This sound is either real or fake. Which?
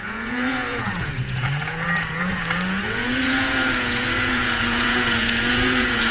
fake